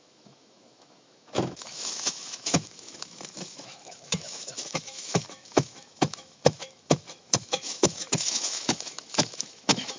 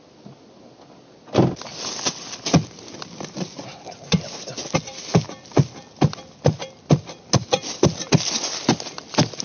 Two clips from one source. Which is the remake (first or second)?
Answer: first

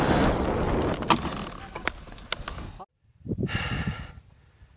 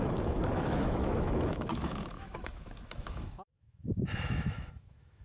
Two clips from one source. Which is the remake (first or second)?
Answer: second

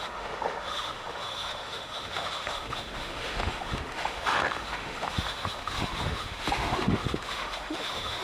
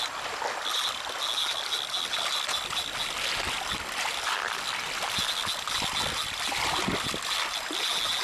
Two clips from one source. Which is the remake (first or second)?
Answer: first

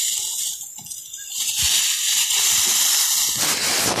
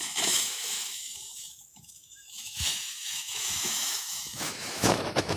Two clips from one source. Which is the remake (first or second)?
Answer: second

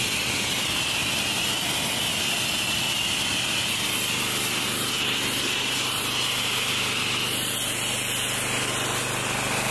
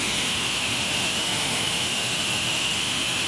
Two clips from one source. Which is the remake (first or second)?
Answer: second